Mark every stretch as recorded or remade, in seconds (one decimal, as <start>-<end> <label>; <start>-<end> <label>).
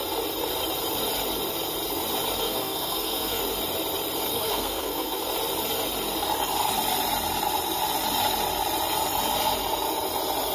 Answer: 0.0-2.4 recorded; 2.4-3.4 remade; 3.4-4.3 recorded; 4.3-5.2 remade; 5.2-10.5 recorded